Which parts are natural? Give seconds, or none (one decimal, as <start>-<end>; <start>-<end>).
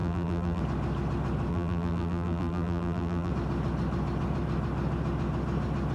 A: 0.6-1.5; 3.3-5.9